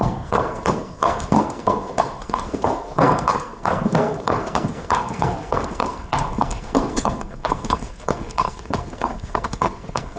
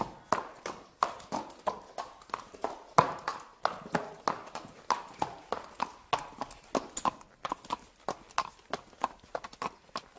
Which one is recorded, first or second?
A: second